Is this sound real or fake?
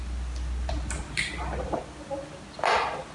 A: real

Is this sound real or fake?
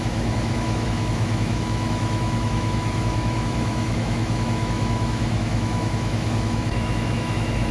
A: fake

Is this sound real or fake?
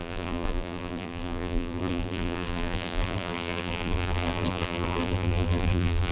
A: fake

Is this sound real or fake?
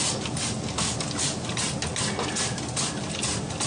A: real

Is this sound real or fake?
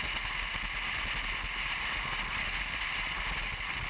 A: real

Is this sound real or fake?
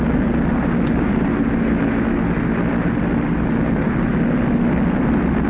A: real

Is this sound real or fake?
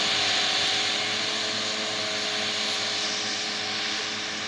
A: real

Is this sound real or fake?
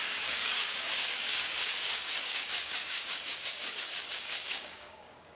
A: fake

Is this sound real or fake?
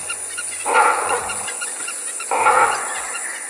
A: fake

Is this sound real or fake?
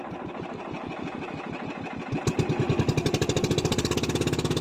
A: real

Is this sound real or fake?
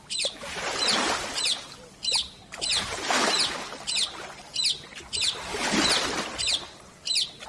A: real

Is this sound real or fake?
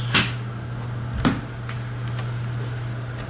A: real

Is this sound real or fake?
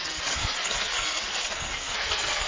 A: fake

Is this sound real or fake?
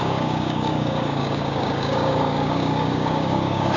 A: fake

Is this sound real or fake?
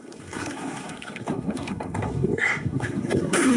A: fake